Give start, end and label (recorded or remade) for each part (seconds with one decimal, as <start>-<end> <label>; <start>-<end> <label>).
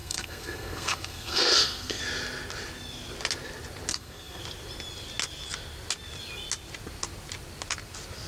0.0-2.0 remade; 2.0-3.9 recorded; 3.9-4.4 remade; 4.4-8.3 recorded